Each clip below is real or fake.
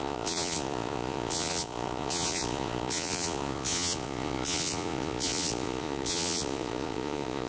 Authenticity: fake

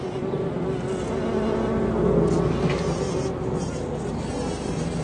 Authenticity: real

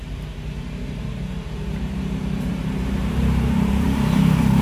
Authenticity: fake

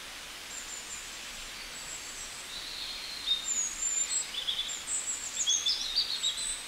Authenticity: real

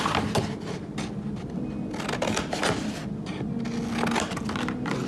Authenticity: real